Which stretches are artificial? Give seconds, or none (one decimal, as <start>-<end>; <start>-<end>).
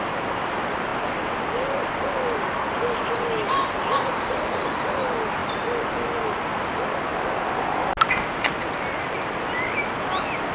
none